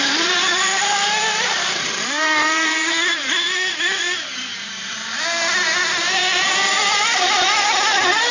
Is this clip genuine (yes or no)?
no